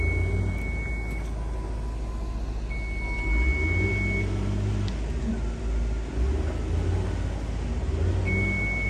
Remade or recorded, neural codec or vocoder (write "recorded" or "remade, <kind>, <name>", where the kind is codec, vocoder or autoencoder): recorded